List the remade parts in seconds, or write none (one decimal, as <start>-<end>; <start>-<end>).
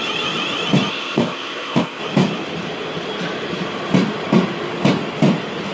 0.9-2.0